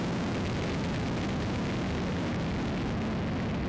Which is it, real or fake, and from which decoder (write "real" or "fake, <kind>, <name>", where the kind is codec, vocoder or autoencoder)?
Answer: real